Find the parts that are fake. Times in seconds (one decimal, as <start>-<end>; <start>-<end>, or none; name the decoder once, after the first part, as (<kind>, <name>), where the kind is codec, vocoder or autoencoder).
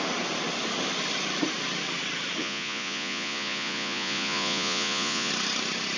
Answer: 2.4-5.3 (vocoder, Vocos)